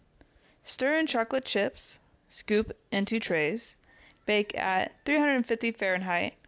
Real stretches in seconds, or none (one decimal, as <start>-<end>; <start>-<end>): 0.0-2.2; 3.2-6.5